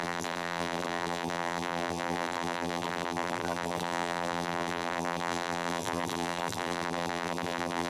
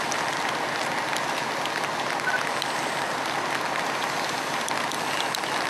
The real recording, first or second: second